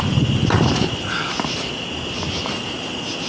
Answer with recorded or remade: recorded